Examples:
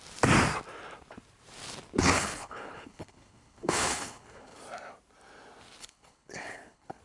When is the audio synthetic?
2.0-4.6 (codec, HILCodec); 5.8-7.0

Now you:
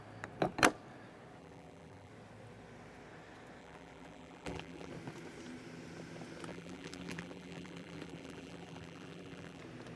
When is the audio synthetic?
1.4-2.1 (vocoder, BigVGAN v2); 3.6-4.9; 6.5-9.6

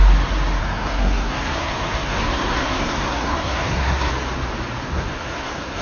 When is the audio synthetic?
0.6-4.1 (codec, SNAC); 4.8-5.8

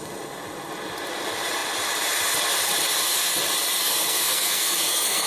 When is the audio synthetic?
3.8-5.3 (codec, SNAC)